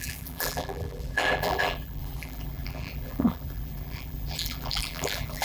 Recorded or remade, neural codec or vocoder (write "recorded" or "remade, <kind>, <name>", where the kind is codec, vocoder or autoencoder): remade, vocoder, BigVGAN v2